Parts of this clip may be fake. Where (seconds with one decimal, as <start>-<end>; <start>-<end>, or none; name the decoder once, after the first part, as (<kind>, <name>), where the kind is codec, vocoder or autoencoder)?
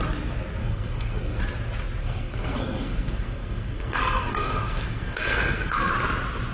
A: 0.6-1.4 (codec, SNAC); 2.0-5.9